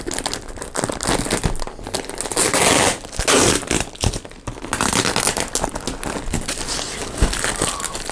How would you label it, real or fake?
real